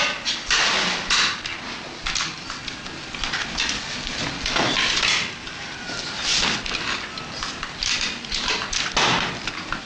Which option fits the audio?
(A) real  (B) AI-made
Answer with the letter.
A